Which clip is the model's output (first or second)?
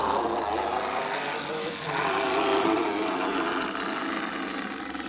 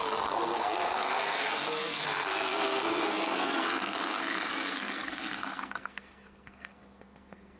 second